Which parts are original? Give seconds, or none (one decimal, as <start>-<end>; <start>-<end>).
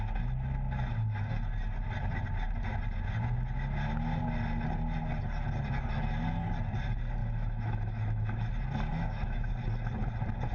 0.0-7.2; 8.5-8.9; 9.5-10.5